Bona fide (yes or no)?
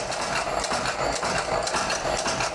yes